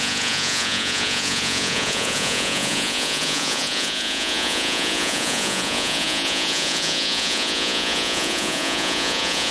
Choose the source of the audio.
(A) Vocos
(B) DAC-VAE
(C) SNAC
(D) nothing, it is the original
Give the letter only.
A